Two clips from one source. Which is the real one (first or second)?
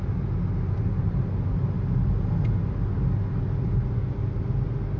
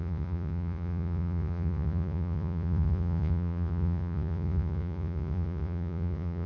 first